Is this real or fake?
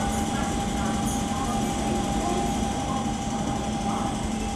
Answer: real